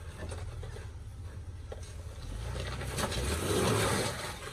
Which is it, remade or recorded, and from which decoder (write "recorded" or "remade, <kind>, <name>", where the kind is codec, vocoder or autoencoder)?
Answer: recorded